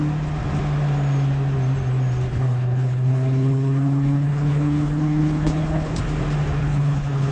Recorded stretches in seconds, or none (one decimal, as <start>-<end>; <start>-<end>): 0.0-2.3; 6.0-6.6